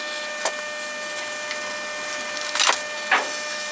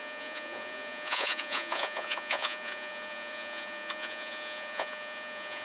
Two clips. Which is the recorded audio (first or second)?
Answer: first